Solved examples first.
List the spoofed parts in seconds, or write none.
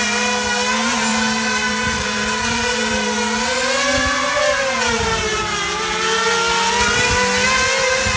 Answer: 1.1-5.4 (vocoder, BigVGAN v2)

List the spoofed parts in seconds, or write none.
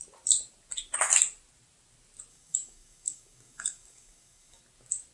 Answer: 2.3-4.6 (codec, DAC)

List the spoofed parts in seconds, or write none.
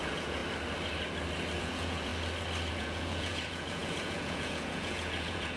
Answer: 0.0-0.4 (vocoder, Vocos); 1.6-2.1; 2.7-5.6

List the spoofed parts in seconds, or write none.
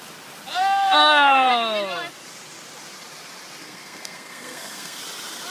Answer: 0.6-1.5 (codec, SNAC); 3.6-5.0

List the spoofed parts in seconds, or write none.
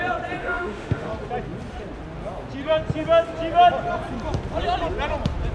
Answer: 0.4-1.1 (autoencoder, DAC-VAE)